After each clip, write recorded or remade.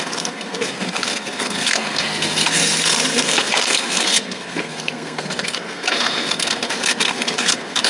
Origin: remade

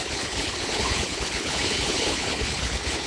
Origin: remade